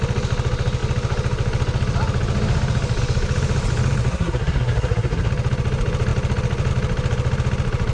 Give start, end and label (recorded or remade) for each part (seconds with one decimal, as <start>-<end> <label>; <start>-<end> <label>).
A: 0.0-4.1 recorded; 4.1-5.3 remade; 5.3-7.9 recorded